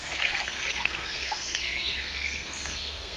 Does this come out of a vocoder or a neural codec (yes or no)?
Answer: yes